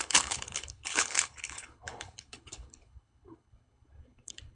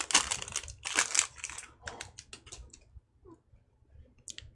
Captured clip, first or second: second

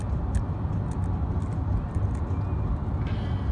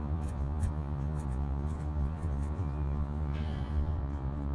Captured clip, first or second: first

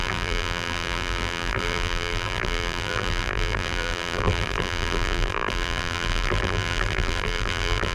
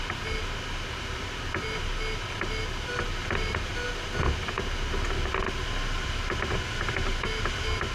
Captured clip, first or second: second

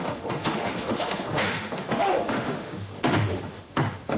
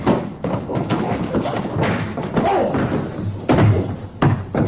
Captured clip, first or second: second